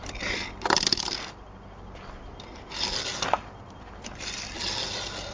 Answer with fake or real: real